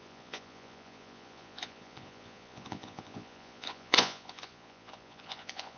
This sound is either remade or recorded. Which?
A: remade